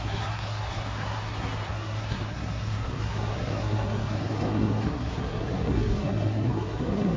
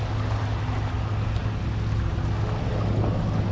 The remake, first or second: first